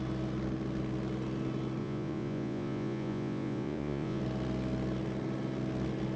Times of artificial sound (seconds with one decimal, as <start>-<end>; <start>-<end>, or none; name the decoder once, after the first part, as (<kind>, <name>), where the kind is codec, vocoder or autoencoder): 1.8-4.2 (vocoder, Vocos)